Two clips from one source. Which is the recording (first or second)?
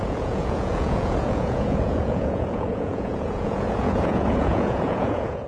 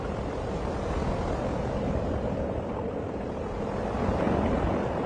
second